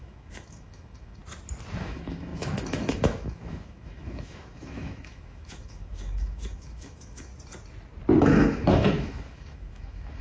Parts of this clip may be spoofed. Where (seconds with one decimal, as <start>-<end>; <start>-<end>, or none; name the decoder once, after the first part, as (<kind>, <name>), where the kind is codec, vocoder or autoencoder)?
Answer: 0.0-1.2 (autoencoder, DAC-VAE); 1.8-7.3; 8.2-10.2